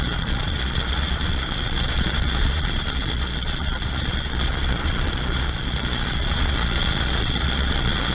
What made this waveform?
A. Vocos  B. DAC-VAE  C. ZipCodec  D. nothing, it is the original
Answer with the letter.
A